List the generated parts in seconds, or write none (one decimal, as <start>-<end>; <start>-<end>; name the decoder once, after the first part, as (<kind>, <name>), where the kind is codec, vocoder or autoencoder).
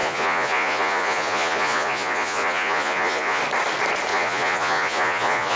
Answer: 0.0-3.4 (vocoder, Vocos); 4.1-5.6